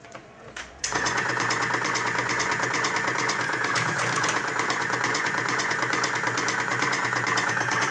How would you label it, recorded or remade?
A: remade